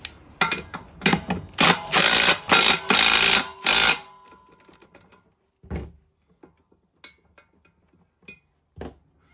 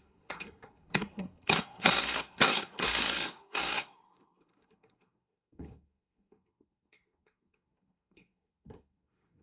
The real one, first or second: first